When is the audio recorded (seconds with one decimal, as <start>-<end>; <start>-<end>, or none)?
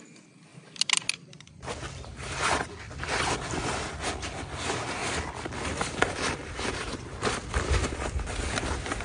0.0-6.4; 8.0-9.0